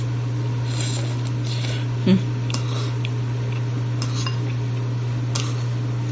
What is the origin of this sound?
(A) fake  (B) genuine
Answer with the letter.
B